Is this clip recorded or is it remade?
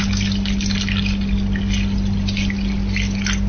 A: recorded